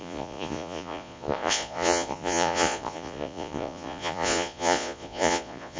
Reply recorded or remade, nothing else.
remade